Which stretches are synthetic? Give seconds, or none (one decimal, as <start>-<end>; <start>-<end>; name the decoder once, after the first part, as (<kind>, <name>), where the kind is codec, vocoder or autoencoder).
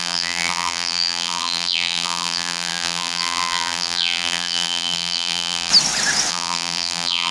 0.0-5.7 (vocoder, BigVGAN v2); 6.3-7.3